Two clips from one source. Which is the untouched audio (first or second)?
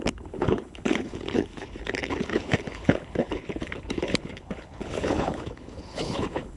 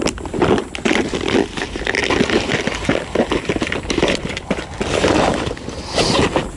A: second